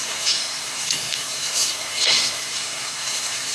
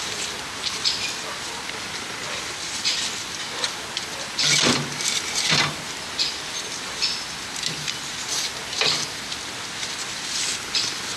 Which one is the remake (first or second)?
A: first